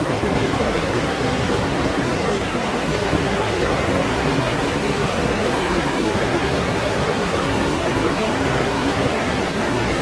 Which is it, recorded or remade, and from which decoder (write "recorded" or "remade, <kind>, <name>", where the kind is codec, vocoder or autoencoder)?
remade, codec, SNAC